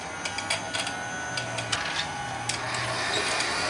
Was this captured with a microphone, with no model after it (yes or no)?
yes